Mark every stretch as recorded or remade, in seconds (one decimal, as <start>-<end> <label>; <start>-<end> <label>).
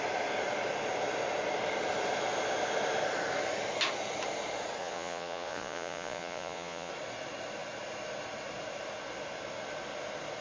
0.0-4.8 recorded; 4.8-6.9 remade; 6.9-10.4 recorded